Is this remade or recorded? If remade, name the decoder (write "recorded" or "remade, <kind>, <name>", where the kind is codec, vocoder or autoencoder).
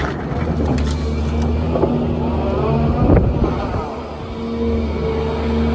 recorded